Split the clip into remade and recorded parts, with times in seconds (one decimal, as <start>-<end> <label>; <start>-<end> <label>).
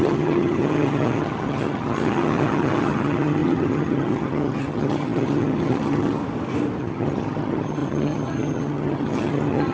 0.0-6.2 remade; 6.2-6.8 recorded; 6.8-9.7 remade